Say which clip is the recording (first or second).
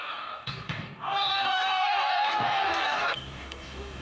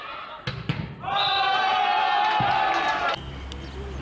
second